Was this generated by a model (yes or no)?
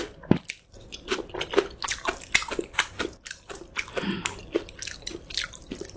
no